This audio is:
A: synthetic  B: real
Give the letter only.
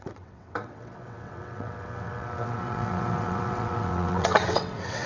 A